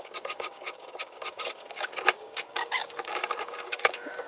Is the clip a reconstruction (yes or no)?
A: yes